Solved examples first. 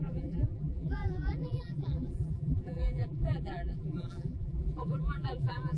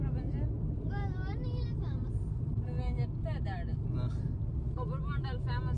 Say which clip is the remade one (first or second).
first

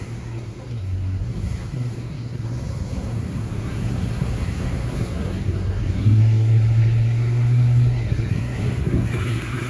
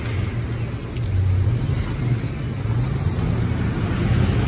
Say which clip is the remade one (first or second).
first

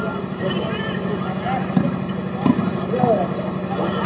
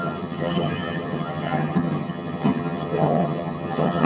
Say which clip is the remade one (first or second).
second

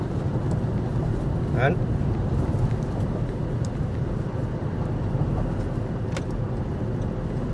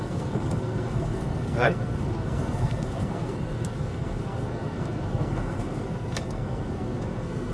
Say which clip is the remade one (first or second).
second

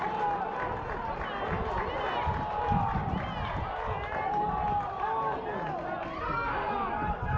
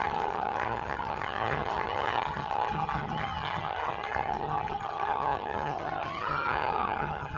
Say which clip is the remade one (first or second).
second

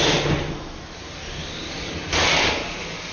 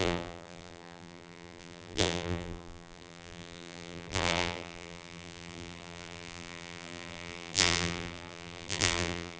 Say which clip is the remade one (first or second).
second